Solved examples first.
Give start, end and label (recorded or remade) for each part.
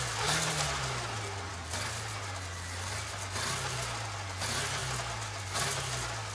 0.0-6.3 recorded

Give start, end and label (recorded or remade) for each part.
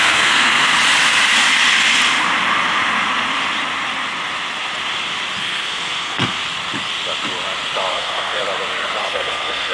0.0-0.7 remade; 0.7-5.4 recorded; 5.4-6.4 remade; 6.4-7.9 recorded; 7.9-8.4 remade; 8.4-9.0 recorded; 9.0-9.7 remade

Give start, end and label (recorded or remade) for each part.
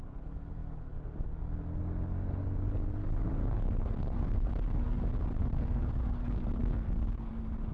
0.0-3.4 recorded; 3.4-5.0 remade; 5.0-5.4 recorded; 5.4-7.3 remade; 7.3-7.7 recorded